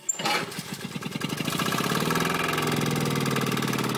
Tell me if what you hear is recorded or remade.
recorded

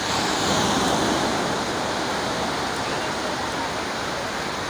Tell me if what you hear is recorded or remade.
recorded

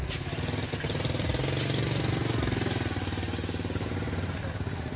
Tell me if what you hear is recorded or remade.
recorded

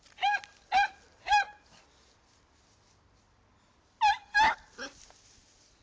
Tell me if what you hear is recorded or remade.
recorded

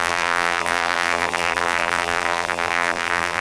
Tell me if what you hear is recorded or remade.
remade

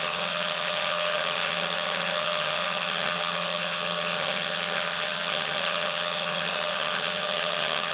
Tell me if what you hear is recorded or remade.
remade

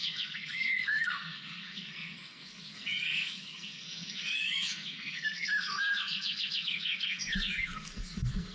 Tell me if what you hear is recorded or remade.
remade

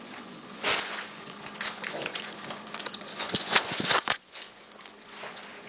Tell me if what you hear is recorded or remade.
remade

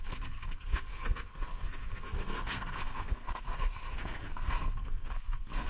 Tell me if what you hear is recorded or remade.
remade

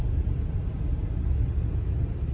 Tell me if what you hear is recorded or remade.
recorded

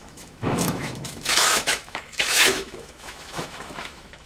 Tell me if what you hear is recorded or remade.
remade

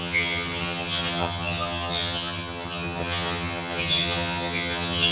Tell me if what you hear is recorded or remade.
remade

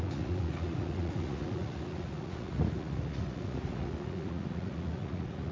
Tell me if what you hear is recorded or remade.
remade